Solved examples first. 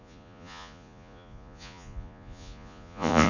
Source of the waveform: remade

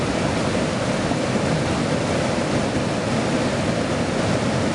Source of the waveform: recorded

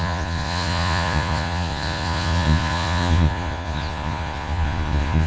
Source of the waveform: remade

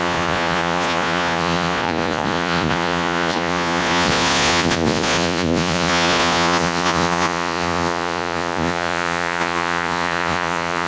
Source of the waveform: remade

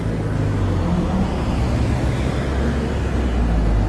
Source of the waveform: recorded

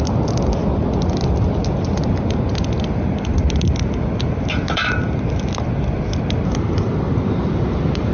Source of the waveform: recorded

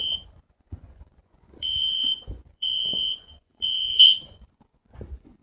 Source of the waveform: remade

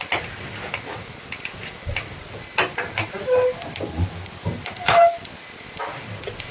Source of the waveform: recorded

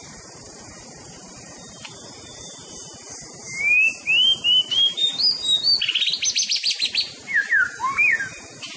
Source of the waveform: recorded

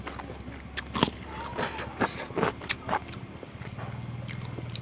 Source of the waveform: recorded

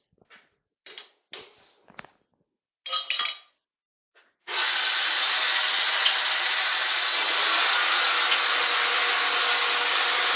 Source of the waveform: recorded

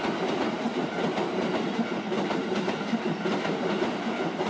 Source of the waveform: recorded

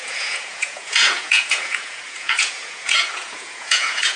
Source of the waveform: remade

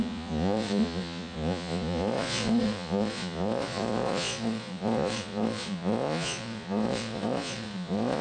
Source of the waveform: remade